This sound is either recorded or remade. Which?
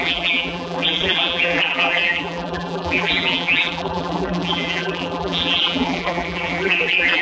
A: remade